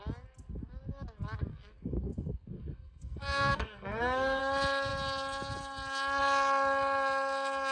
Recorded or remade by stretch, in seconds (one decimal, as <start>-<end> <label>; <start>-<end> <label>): 0.0-1.5 recorded; 1.5-4.4 remade; 4.4-7.7 recorded